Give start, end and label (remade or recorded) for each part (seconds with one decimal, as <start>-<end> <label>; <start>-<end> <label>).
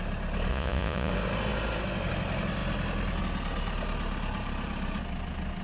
0.0-0.5 recorded; 0.5-1.1 remade; 1.1-5.6 recorded